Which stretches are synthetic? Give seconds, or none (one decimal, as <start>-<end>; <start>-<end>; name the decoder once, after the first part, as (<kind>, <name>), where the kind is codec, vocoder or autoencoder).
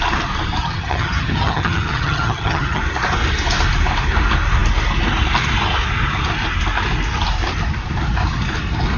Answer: 0.6-2.8 (vocoder, HiFi-GAN)